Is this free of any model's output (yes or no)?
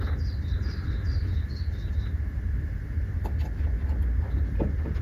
yes